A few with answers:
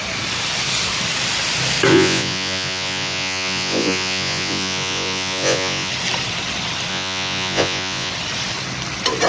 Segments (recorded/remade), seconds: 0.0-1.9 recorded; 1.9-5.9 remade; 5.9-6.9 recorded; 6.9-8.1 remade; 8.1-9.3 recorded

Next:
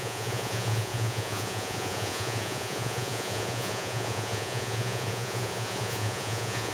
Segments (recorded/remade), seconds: 0.0-6.7 remade

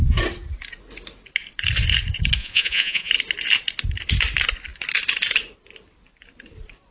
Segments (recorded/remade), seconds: 0.0-2.4 recorded; 2.4-3.1 remade; 3.1-6.9 recorded

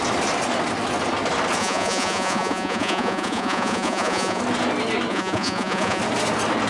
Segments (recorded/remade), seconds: 0.0-1.6 recorded; 1.6-4.4 remade; 4.4-5.1 recorded; 5.1-6.0 remade; 6.0-6.7 recorded

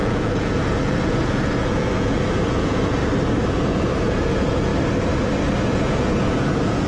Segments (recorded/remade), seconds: 0.0-3.0 remade; 3.0-3.5 recorded; 3.5-4.7 remade; 4.7-5.6 recorded; 5.6-6.9 remade